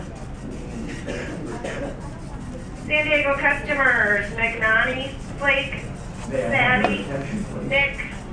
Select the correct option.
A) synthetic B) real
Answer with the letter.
B